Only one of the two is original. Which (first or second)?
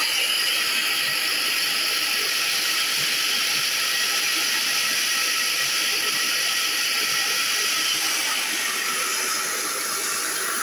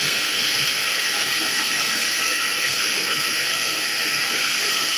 first